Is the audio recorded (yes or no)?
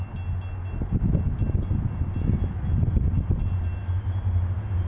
yes